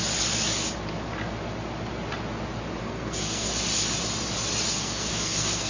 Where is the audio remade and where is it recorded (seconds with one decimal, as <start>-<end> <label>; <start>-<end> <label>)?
0.0-2.8 recorded; 2.8-3.5 remade; 3.5-4.7 recorded; 4.7-5.7 remade